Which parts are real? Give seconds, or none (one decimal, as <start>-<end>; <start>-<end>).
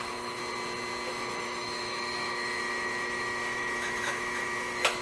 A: 0.4-1.1